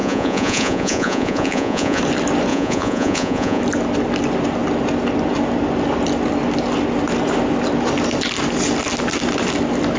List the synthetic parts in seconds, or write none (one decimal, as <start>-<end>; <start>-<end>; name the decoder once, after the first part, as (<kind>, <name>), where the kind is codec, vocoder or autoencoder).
0.0-2.0 (vocoder, Vocos); 2.5-3.6